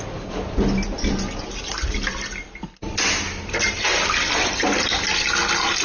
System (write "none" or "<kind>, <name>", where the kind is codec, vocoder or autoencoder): none